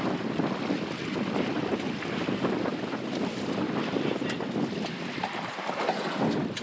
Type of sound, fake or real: real